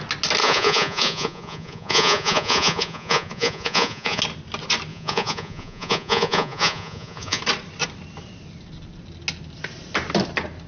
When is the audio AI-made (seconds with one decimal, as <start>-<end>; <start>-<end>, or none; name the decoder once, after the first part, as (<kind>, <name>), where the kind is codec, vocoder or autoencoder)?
0.4-4.2 (vocoder, Vocos); 4.9-7.4